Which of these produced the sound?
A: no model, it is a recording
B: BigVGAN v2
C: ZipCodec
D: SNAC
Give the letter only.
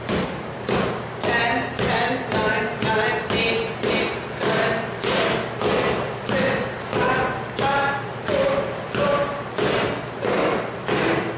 A